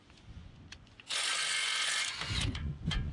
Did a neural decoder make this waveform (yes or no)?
yes